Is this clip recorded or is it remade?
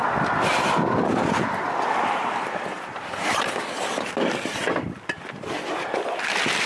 remade